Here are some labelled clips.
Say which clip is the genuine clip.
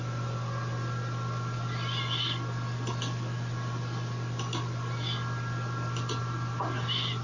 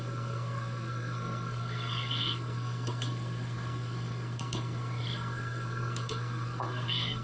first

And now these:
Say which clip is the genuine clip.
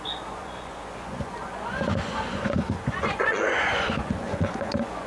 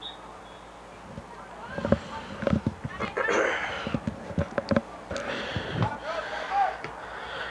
second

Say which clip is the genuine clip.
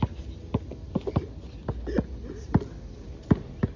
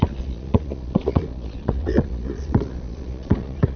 first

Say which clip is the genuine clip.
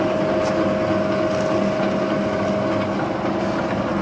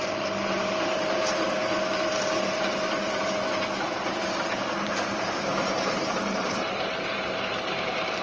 first